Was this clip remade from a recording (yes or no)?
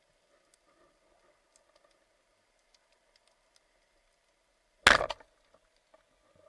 no